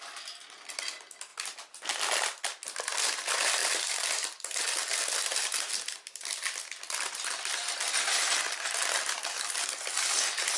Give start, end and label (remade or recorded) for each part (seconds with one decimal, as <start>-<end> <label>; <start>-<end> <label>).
0.0-10.6 recorded